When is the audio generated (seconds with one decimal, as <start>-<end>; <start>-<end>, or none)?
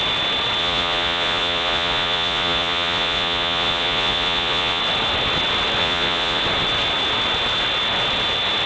0.6-4.8; 5.8-6.4